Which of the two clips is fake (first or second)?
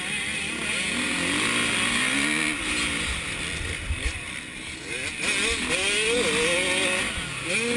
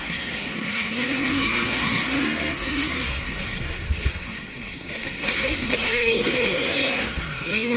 second